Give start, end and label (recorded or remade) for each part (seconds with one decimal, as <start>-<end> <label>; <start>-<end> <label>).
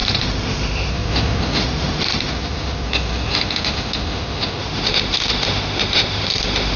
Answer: 0.0-0.9 remade; 0.9-1.6 recorded; 1.6-2.3 remade; 2.3-4.6 recorded; 4.6-6.8 remade